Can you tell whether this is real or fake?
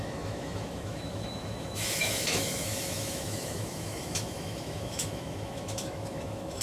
fake